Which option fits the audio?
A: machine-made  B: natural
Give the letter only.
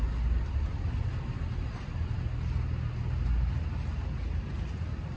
B